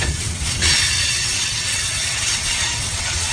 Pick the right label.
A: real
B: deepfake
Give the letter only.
B